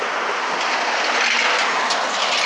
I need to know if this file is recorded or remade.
recorded